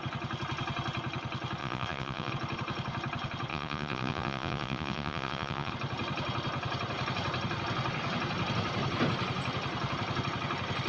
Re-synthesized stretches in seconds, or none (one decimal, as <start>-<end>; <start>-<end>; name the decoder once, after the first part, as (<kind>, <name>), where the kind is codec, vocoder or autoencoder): 1.6-2.3 (vocoder, Vocos); 3.5-5.7